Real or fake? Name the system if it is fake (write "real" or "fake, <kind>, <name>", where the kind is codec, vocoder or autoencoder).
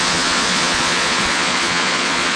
fake, vocoder, Vocos